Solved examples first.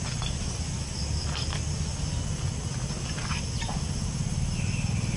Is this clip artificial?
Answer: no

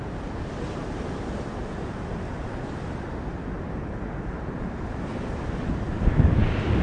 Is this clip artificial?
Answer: no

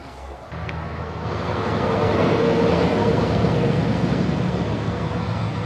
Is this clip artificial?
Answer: yes